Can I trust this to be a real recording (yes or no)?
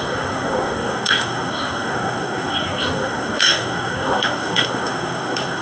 no